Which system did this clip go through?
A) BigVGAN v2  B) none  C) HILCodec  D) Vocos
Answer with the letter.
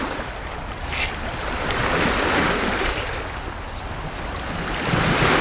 B